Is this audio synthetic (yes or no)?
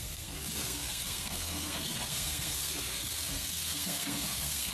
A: yes